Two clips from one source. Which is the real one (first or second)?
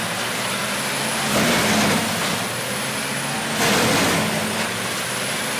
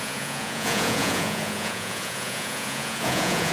first